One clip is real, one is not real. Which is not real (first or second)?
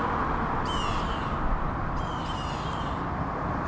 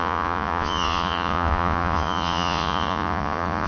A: second